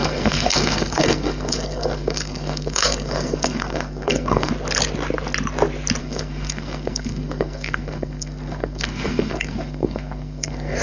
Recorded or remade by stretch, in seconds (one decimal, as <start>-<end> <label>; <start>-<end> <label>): 0.0-4.5 remade; 4.5-6.0 recorded; 6.0-10.8 remade